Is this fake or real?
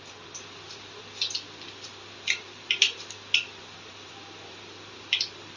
fake